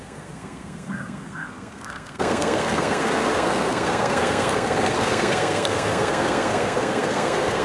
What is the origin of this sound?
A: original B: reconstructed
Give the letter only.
B